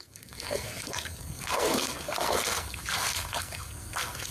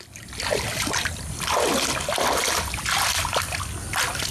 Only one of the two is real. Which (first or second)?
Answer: second